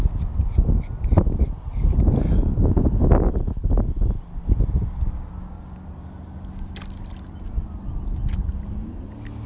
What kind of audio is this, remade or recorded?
recorded